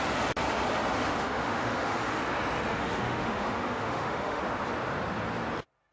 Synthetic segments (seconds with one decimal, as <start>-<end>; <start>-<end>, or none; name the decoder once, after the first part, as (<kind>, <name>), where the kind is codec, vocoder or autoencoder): 1.0-2.2 (autoencoder, DAC-VAE); 2.7-4.4